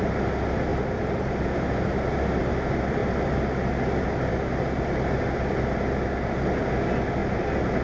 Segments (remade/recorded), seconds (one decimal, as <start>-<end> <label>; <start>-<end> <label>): 0.0-0.7 recorded; 0.7-2.4 remade; 2.4-7.2 recorded; 7.2-7.8 remade